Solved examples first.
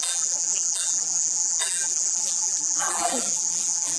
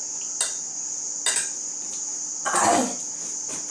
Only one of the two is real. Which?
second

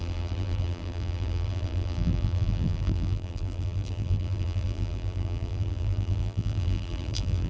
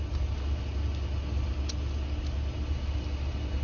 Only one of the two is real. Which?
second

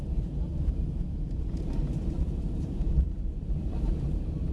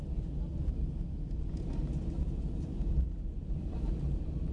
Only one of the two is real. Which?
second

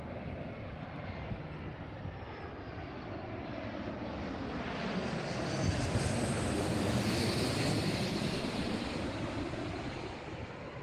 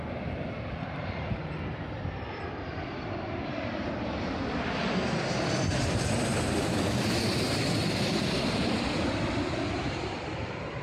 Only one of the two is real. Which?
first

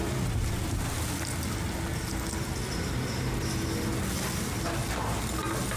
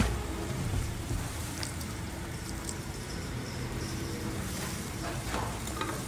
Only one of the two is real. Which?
first